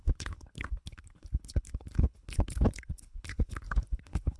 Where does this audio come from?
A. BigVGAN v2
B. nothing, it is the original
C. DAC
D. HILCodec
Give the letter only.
D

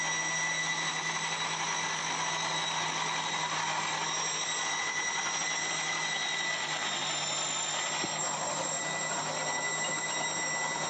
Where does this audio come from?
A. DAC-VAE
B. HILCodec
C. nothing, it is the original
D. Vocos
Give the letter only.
C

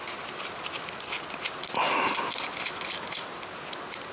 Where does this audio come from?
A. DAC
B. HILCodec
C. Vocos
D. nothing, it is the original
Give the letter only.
D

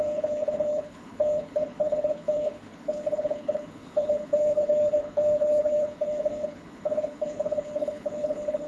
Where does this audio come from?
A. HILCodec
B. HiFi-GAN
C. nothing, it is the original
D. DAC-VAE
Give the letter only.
A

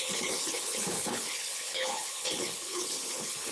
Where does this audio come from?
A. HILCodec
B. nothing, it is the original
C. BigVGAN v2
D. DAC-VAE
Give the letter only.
A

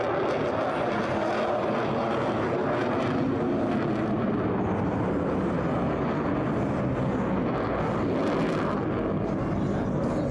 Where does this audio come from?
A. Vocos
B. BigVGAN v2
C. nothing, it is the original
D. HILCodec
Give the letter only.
C